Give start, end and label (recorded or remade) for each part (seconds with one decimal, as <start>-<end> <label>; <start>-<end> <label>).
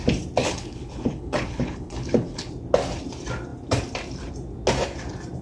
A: 0.0-0.4 recorded; 0.4-2.5 remade; 2.5-5.4 recorded